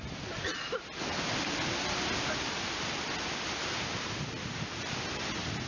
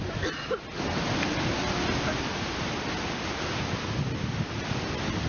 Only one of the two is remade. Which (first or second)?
first